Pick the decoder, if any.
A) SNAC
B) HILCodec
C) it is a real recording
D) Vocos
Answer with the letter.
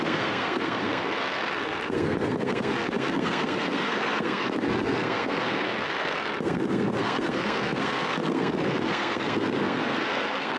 A